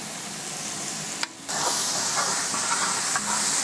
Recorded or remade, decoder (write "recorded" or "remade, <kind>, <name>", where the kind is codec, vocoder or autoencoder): recorded